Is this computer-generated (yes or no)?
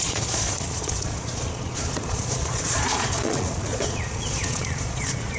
yes